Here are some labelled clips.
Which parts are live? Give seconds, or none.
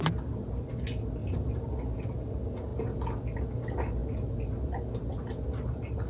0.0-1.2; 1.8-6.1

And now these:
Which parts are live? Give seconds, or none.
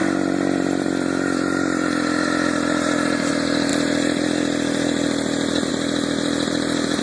3.3-3.7; 5.7-7.0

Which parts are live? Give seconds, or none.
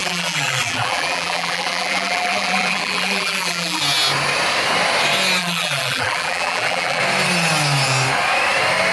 3.8-5.4; 7.0-8.9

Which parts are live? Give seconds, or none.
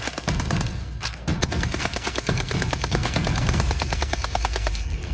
none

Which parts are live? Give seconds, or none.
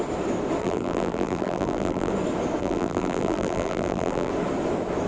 0.0-0.6; 2.1-2.6; 4.3-5.1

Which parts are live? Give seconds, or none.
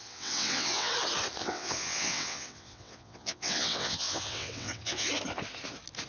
0.9-1.4; 5.1-6.1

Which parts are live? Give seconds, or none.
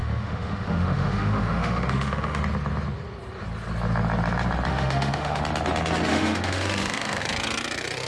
2.4-4.7; 5.4-6.1; 7.2-8.1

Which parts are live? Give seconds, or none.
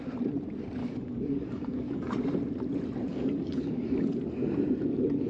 0.0-0.8; 2.1-3.1; 4.2-5.3